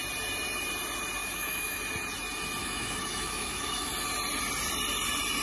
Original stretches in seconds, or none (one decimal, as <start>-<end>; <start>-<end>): 0.0-1.2; 1.8-2.6; 3.9-5.4